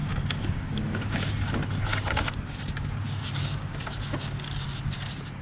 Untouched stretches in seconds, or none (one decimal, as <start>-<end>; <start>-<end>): 1.3-1.9; 4.1-5.4